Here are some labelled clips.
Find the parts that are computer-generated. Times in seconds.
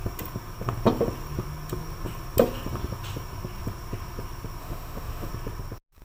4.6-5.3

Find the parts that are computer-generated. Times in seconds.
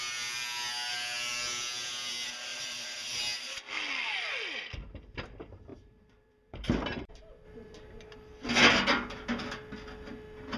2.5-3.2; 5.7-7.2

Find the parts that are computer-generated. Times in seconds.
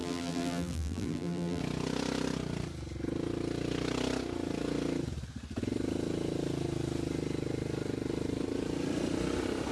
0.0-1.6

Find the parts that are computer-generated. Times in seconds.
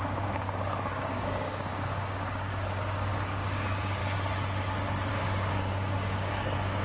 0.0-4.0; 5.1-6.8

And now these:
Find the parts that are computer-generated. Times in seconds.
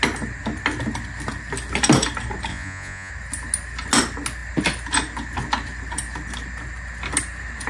2.5-3.1